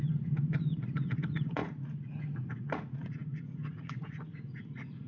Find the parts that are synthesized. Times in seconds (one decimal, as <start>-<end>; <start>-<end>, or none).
0.0-5.1